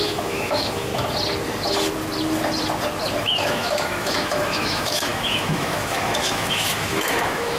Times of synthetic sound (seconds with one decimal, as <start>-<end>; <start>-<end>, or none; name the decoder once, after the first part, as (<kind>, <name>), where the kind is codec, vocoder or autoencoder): 0.0-0.9 (autoencoder, DAC-VAE); 3.2-7.6